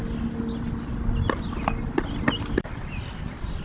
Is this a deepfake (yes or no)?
no